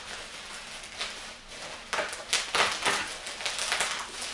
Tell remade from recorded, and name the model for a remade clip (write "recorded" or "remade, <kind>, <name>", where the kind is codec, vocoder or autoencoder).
recorded